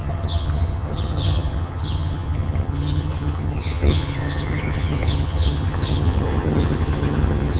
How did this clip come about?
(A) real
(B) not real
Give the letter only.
B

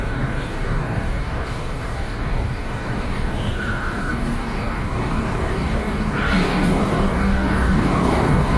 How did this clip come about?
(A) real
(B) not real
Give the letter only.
B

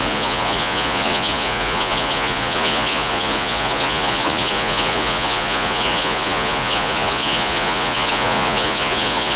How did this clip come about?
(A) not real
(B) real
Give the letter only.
A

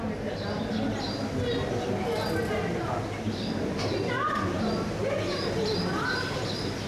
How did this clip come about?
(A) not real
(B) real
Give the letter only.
B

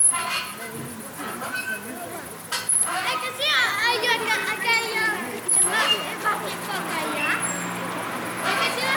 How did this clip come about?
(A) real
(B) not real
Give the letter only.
A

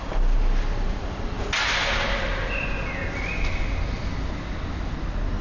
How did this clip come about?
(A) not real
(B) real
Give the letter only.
B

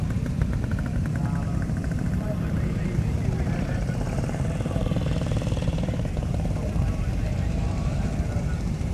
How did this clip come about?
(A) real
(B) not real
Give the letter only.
B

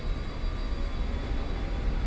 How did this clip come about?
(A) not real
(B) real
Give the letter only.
B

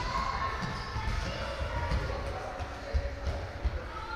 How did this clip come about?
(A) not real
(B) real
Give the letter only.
B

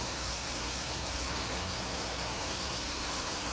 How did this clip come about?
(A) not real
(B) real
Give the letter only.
A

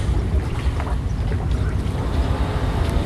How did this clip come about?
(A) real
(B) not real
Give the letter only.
A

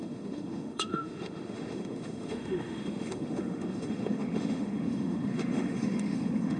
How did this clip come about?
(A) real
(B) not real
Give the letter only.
B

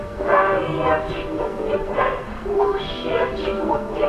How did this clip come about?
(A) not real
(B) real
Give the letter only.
A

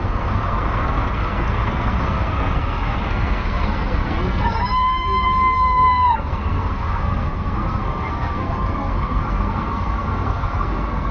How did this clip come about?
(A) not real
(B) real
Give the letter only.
A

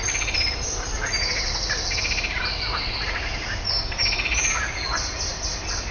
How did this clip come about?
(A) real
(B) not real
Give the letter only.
A